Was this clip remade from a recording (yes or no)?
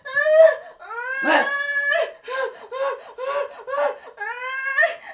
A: no